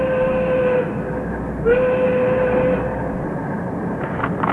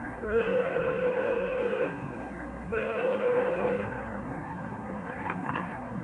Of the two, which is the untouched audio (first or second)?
first